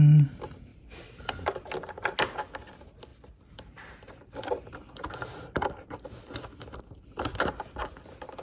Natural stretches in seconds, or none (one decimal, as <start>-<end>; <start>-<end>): 0.0-0.7; 1.7-3.1; 6.8-8.4